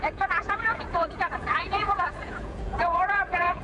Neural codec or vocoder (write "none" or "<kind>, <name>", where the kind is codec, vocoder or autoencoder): vocoder, Vocos